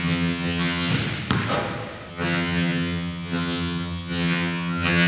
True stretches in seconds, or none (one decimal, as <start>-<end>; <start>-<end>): 0.9-2.1